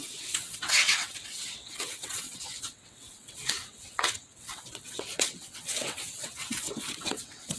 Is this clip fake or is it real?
fake